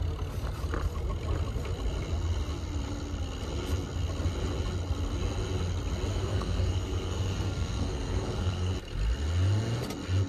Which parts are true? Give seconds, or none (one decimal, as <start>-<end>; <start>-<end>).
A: 0.0-6.1; 8.7-10.3